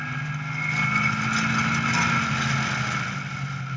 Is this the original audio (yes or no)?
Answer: yes